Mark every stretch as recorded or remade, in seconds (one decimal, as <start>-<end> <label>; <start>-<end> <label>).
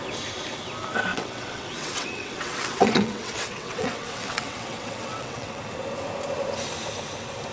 0.0-1.1 recorded; 1.1-5.6 remade; 5.6-7.5 recorded